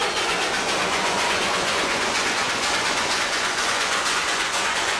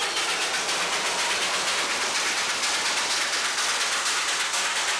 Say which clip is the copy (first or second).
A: first